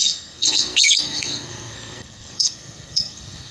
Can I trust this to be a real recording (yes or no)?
no